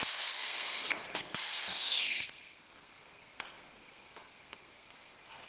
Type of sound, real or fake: fake